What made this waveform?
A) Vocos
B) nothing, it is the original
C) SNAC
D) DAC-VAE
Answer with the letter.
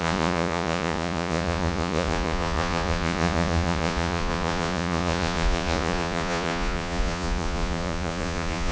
A